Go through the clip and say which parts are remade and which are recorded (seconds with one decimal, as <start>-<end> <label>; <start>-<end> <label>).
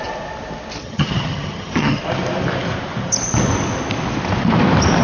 0.0-0.8 recorded; 0.8-2.0 remade; 2.0-5.0 recorded